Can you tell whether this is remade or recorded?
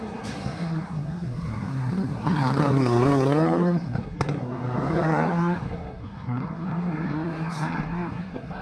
remade